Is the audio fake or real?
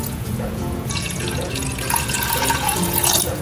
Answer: fake